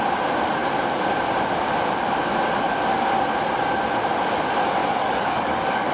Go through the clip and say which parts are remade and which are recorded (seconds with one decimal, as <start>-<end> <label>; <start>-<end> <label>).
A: 0.0-4.8 recorded; 4.8-5.9 remade